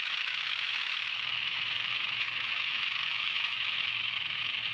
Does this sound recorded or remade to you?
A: remade